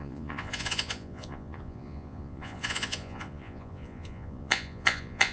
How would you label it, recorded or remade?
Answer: remade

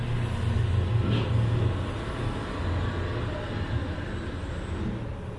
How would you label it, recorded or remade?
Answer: recorded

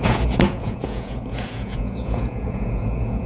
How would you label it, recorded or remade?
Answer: remade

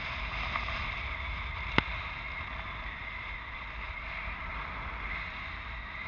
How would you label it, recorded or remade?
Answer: recorded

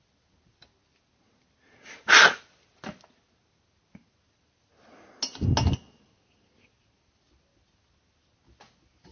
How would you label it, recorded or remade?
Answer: recorded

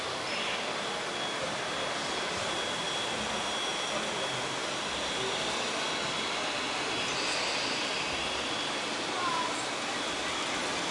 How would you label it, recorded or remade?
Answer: recorded